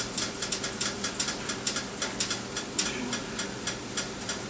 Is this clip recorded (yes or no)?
no